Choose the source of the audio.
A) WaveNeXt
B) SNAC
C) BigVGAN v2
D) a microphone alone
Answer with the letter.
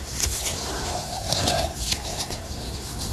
B